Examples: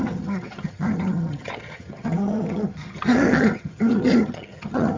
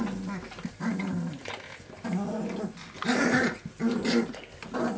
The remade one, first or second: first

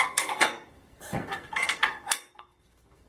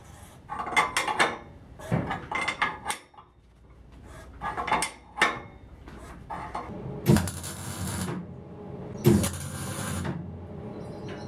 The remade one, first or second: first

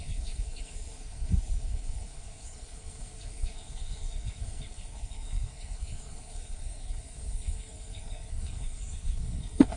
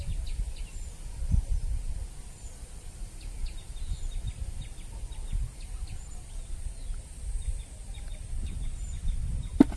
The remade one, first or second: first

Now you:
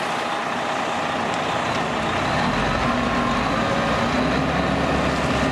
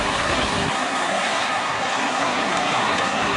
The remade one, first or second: second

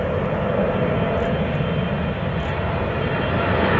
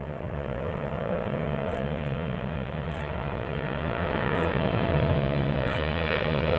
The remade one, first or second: second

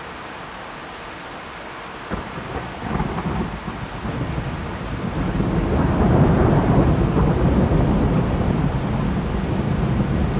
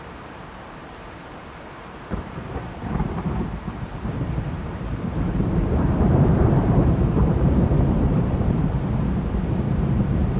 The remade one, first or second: second